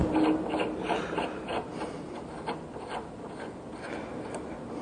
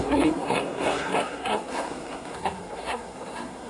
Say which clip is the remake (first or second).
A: second